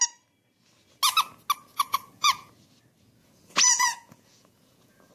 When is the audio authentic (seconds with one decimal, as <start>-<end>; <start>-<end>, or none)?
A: 0.0-1.7; 2.5-3.2